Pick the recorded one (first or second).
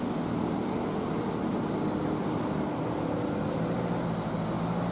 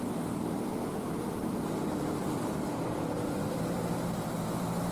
first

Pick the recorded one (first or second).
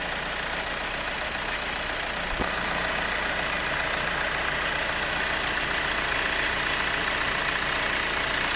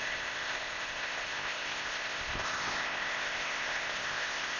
first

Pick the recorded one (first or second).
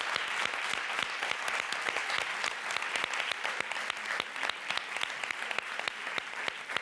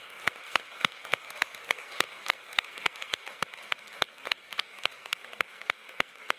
first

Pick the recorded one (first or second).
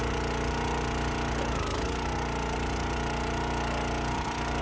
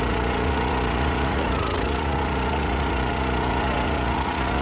first